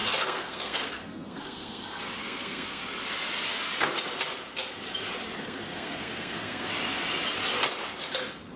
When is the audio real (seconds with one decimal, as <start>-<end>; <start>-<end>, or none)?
1.8-2.2; 2.8-5.4; 6.7-8.6